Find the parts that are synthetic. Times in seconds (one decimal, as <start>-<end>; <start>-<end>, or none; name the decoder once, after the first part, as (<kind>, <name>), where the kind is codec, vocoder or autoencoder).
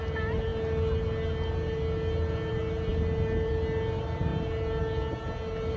none